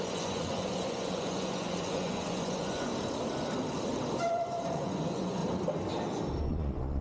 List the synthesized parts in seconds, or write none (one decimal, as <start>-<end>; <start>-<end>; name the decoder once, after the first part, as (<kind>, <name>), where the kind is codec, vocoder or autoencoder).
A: 0.0-2.9 (vocoder, Vocos); 4.3-5.4; 6.4-7.0